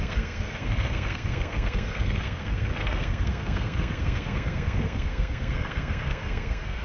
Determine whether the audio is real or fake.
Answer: fake